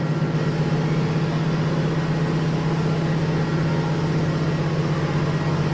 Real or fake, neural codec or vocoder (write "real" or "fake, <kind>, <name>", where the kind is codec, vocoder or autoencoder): real